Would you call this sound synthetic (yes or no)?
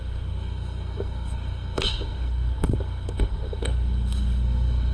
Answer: yes